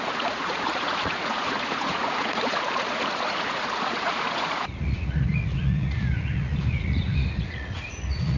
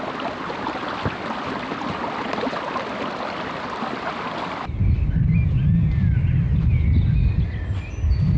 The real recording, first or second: second